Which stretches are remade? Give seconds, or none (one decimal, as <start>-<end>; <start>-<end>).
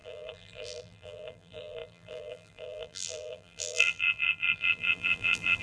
0.0-5.6